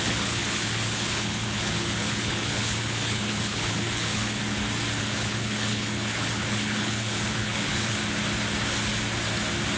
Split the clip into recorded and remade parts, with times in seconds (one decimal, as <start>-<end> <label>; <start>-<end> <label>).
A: 0.0-4.4 remade; 4.4-5.0 recorded; 5.0-8.0 remade; 8.0-9.8 recorded